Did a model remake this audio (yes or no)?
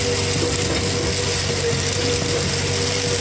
no